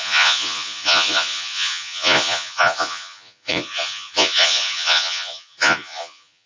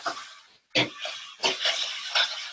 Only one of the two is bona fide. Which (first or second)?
second